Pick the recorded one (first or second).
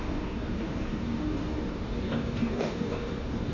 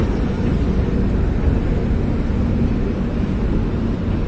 second